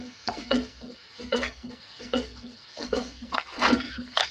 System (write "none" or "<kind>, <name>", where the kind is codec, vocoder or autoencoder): codec, SNAC